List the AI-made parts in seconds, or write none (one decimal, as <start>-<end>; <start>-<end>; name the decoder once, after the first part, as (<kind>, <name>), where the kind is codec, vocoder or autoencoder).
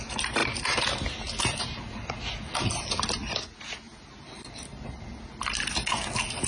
none